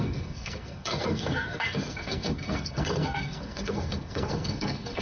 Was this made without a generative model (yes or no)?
no